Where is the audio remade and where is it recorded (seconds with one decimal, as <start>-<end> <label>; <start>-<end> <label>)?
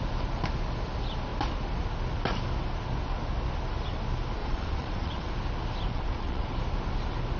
0.0-4.4 recorded; 4.4-5.3 remade; 5.3-5.9 recorded; 5.9-6.5 remade; 6.5-7.4 recorded